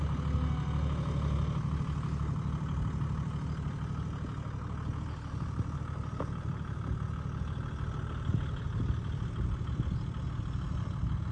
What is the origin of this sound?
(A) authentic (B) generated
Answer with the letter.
A